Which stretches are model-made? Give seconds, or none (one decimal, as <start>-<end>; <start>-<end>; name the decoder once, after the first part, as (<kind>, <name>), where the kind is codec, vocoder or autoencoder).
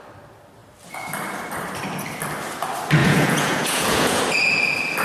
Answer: 3.0-4.2 (vocoder, Vocos)